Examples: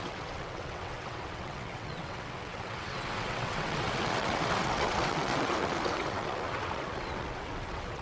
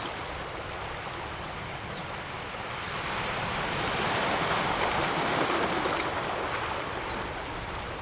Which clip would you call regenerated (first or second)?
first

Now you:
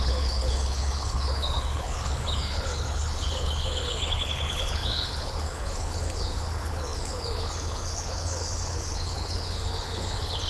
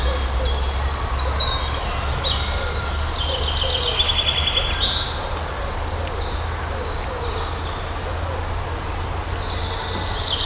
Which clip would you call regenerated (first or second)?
first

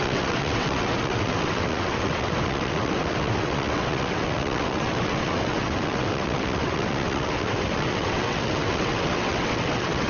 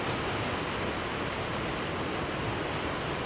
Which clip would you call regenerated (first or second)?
first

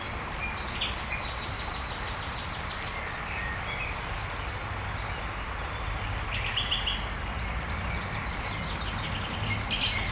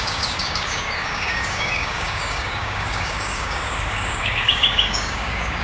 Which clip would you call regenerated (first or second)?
second